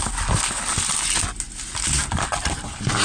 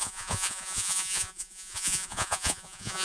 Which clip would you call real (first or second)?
first